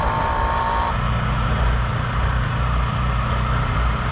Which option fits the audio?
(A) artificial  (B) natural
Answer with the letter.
B